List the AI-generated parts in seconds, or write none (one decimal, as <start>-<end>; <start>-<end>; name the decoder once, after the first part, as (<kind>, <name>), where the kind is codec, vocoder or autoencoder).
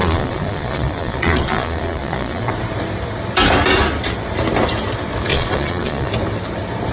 0.0-2.5 (vocoder, Vocos); 5.3-6.1